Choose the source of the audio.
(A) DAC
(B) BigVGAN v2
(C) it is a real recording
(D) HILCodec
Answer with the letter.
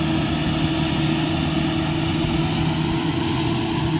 C